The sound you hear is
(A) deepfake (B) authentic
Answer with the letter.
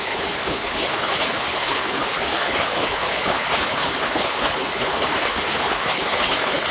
A